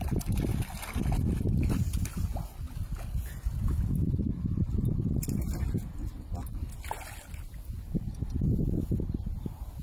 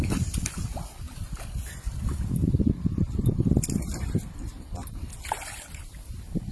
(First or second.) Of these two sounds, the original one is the first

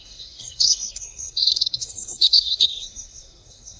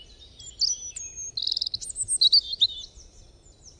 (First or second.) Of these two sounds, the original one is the second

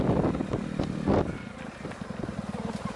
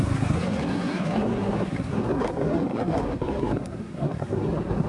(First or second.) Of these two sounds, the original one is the first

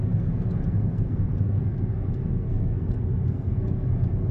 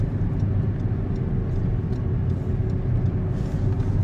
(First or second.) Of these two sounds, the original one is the second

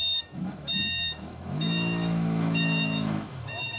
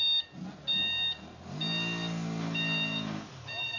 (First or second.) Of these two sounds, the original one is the second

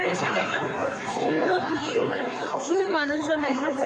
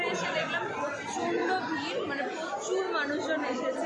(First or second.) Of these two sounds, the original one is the second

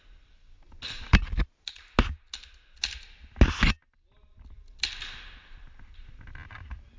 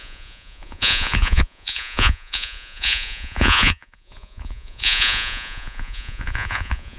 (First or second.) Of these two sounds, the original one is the first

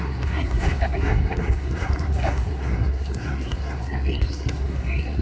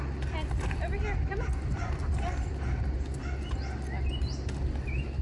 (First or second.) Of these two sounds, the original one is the second